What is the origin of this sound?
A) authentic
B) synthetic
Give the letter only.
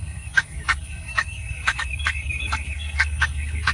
B